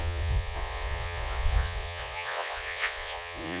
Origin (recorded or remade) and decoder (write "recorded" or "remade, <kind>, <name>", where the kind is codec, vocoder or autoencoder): remade, vocoder, Vocos